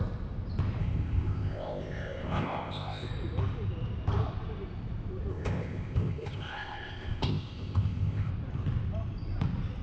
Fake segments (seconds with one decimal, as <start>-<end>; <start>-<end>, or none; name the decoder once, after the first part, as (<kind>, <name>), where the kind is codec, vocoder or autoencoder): 0.8-3.1 (codec, ZipCodec); 5.3-8.3